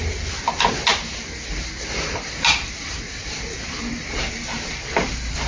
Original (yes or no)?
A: yes